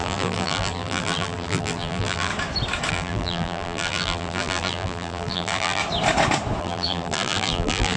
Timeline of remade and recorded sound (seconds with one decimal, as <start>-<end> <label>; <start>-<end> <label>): 0.0-2.3 remade; 2.3-2.9 recorded; 2.9-5.8 remade; 5.8-6.6 recorded; 6.6-8.0 remade